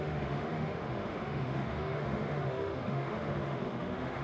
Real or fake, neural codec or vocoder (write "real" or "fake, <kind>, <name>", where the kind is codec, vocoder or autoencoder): fake, autoencoder, DAC-VAE